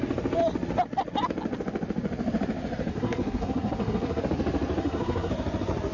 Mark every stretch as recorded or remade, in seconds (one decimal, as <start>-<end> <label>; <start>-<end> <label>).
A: 0.0-2.9 recorded; 2.9-4.2 remade; 4.2-4.8 recorded; 4.8-5.3 remade; 5.3-5.9 recorded